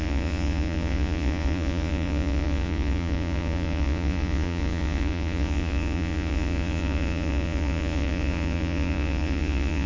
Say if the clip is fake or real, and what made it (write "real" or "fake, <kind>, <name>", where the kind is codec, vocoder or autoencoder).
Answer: fake, vocoder, Vocos